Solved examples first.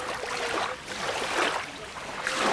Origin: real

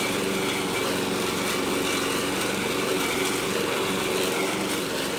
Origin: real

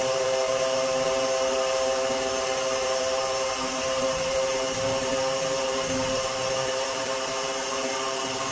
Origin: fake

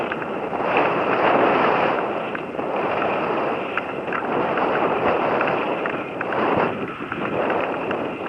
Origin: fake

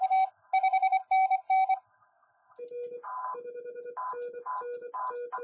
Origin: real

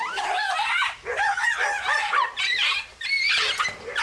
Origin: real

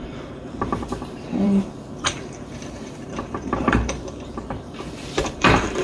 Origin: fake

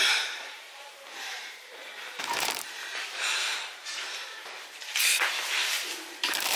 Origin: fake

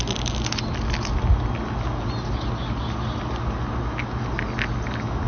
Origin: real